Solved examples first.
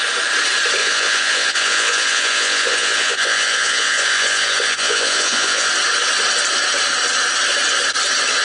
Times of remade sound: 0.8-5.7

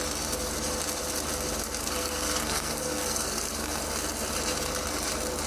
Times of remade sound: 1.8-3.8

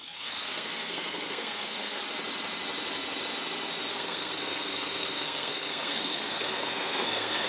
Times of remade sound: 0.0-2.0; 3.9-7.5

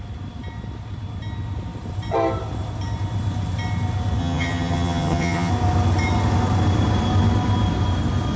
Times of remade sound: 4.2-5.5

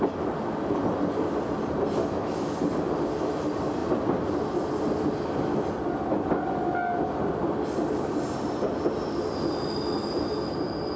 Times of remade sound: 2.0-2.6